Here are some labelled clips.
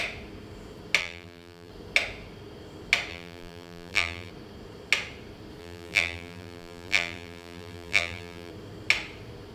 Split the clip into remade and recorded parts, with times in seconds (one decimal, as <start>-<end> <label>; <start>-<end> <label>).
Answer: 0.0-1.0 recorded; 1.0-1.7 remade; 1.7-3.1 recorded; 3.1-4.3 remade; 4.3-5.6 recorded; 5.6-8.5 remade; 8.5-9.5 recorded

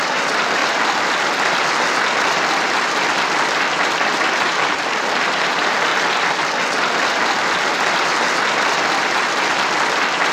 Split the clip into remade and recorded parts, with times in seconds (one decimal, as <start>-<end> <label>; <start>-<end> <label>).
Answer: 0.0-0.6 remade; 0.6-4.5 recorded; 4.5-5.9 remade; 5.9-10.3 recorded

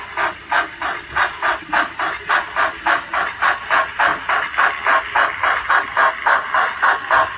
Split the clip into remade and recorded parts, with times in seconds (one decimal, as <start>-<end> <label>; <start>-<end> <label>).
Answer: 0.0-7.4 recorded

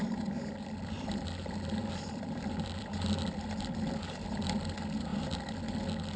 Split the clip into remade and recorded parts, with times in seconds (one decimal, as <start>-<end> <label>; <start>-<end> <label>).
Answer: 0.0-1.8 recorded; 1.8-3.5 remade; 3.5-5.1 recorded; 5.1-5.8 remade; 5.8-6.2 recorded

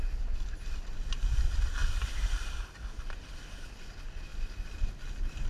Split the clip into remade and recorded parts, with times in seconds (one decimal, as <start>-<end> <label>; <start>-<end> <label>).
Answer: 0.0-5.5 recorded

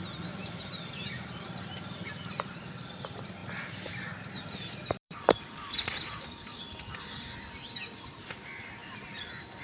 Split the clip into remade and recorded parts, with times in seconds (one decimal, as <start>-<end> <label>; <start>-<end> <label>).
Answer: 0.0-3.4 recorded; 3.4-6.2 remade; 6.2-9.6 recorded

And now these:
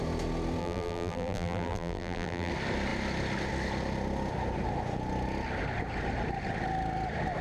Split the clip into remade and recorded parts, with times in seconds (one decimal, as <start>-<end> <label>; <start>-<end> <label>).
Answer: 0.0-0.6 recorded; 0.6-2.5 remade; 2.5-7.4 recorded